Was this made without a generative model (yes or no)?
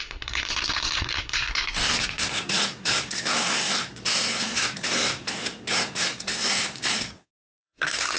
no